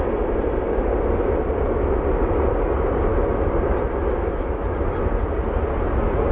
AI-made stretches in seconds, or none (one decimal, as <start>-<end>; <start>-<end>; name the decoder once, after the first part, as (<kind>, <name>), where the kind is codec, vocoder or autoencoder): none

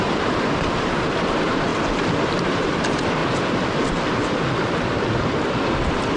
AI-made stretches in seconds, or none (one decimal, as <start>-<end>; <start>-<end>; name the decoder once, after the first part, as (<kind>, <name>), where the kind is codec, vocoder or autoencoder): 0.0-1.7 (vocoder, BigVGAN v2); 2.4-3.2; 5.5-6.2

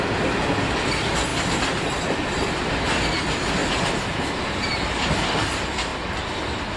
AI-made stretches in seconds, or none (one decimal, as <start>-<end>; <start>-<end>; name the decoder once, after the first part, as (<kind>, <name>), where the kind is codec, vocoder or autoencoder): 1.3-2.7 (vocoder, BigVGAN v2); 3.6-4.8

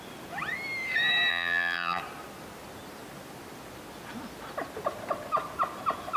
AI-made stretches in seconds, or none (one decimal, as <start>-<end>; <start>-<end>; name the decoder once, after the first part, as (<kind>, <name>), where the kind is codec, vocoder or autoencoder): 1.3-2.0 (vocoder, BigVGAN v2)

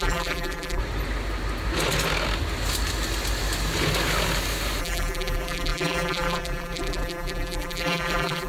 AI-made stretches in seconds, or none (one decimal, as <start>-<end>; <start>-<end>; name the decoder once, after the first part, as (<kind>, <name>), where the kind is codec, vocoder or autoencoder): 0.0-0.8 (vocoder, BigVGAN v2); 4.8-8.5